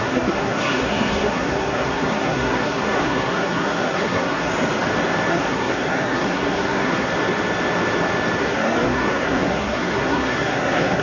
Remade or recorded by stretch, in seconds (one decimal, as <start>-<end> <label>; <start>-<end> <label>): 0.0-4.5 remade; 4.5-5.3 recorded; 5.3-7.1 remade; 7.1-8.4 recorded; 8.4-11.0 remade

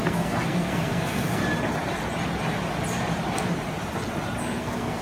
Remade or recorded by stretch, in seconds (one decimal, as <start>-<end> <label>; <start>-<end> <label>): 0.0-1.4 remade; 1.4-4.4 recorded; 4.4-5.0 remade